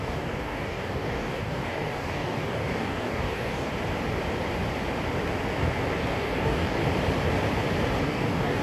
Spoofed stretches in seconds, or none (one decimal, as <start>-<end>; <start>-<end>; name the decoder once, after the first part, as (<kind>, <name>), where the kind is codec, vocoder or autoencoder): 0.0-3.7 (codec, DAC); 6.1-6.8; 8.0-8.6